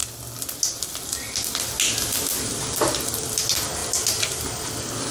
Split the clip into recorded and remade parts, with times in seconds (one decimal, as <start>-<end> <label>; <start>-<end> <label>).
0.0-5.1 recorded